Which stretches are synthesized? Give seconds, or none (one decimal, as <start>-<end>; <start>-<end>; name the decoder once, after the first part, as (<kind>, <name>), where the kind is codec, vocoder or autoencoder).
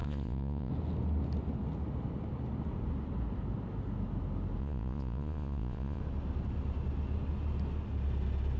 0.0-0.7 (vocoder, Vocos); 4.6-6.0